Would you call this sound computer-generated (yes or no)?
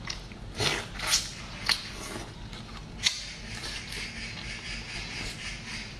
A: no